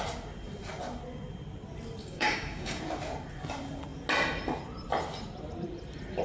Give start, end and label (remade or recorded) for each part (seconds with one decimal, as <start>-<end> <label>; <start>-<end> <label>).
0.0-2.0 recorded; 2.0-2.8 remade; 2.8-6.2 recorded